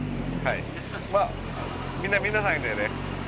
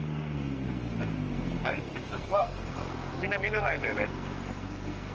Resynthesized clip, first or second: second